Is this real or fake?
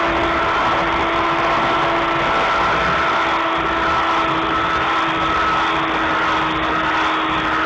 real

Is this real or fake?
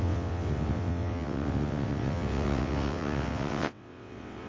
fake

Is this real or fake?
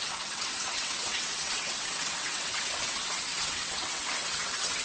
fake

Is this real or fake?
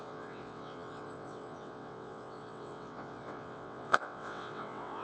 fake